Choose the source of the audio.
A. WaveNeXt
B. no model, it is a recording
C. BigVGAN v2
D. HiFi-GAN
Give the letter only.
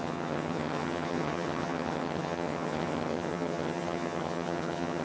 D